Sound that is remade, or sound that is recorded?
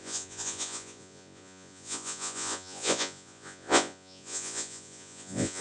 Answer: remade